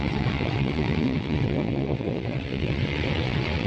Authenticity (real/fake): fake